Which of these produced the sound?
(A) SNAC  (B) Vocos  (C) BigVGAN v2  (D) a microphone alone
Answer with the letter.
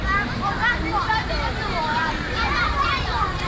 C